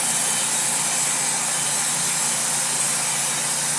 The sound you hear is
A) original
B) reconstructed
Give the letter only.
A